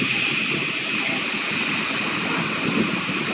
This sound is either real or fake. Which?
real